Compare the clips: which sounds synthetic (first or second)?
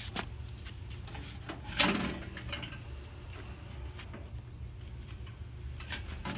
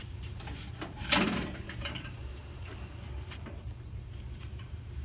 second